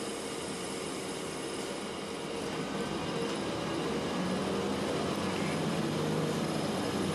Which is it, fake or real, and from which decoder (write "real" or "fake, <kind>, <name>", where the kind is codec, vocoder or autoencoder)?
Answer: real